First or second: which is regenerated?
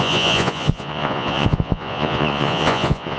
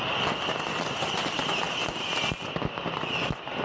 first